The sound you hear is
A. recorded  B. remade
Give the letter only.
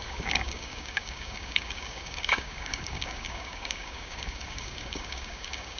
B